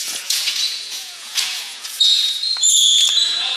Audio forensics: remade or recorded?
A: remade